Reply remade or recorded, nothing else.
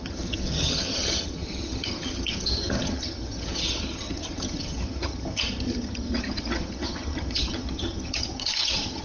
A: remade